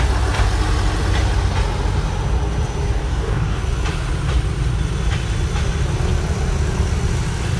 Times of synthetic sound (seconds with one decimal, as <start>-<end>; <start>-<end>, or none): 3.0-3.6